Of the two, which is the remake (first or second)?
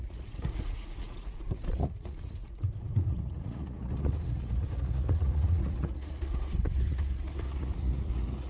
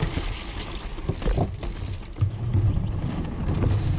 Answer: first